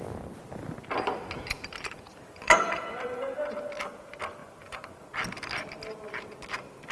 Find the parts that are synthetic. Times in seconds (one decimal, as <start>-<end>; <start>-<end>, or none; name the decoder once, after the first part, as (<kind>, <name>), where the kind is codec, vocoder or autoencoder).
2.1-2.8 (vocoder, Vocos); 4.4-5.1

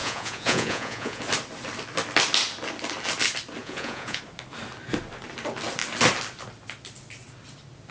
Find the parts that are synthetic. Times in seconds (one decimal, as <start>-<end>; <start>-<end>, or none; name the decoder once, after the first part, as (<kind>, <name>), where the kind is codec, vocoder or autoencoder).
0.0-1.2 (vocoder, Vocos); 3.6-4.2

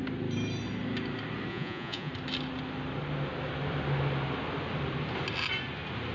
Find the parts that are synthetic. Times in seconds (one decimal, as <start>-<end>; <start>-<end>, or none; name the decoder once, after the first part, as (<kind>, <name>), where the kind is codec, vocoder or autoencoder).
1.5-2.1 (vocoder, Vocos)

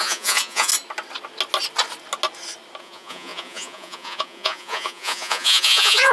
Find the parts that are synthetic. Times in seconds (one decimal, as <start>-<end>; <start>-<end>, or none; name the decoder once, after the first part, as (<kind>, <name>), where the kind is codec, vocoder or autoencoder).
0.0-0.7 (vocoder, Vocos); 2.8-6.1

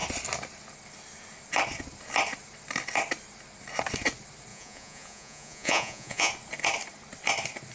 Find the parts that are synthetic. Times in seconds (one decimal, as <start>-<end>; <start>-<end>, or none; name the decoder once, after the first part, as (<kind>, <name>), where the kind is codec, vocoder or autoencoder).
4.5-6.3 (vocoder, Vocos)

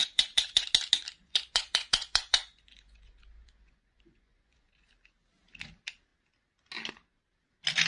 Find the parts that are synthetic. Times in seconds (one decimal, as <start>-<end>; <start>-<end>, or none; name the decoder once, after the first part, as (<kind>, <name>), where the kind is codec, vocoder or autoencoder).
0.0-0.6 (vocoder, Vocos); 1.2-4.9

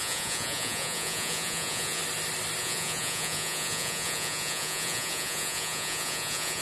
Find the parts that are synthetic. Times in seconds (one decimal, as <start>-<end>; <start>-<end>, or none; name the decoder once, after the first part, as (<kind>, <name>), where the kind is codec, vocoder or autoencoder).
0.0-2.0 (vocoder, Vocos); 2.6-6.6

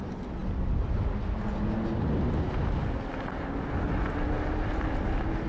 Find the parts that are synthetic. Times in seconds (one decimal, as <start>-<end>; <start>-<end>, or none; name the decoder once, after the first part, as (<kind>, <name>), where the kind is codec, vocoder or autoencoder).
none